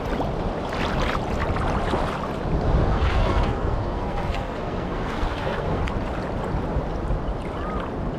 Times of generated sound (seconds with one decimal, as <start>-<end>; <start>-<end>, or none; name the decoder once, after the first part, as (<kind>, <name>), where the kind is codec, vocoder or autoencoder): 2.8-5.8 (codec, SNAC)